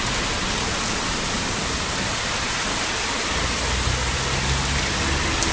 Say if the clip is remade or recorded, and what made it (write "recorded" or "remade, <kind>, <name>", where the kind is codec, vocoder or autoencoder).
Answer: recorded